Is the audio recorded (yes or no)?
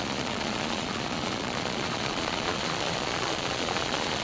no